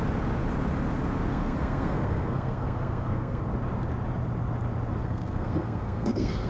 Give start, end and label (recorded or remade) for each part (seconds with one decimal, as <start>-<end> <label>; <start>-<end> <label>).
0.0-1.3 recorded; 1.3-3.4 remade; 3.4-5.0 recorded; 5.0-6.5 remade